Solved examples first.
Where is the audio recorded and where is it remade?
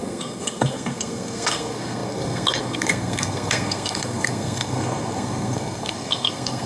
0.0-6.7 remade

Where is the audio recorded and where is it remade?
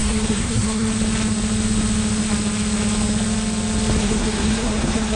0.0-0.9 remade; 0.9-4.0 recorded; 4.0-5.2 remade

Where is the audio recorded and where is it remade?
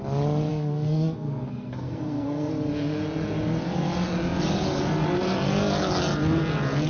0.0-0.5 recorded; 0.5-2.5 remade; 2.5-6.9 recorded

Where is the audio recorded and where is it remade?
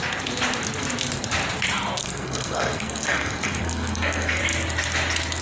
0.0-2.0 recorded; 2.0-4.4 remade; 4.4-5.4 recorded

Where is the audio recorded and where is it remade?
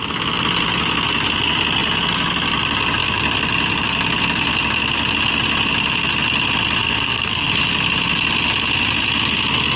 0.0-6.8 recorded; 6.8-7.5 remade; 7.5-9.8 recorded